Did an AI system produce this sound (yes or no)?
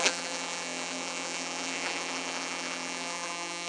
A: yes